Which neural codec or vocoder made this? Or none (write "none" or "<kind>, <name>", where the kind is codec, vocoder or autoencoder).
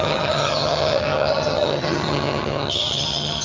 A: vocoder, HiFi-GAN